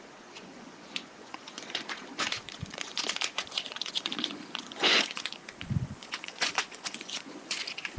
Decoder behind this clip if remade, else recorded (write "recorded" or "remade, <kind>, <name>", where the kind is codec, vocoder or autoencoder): remade, vocoder, Vocos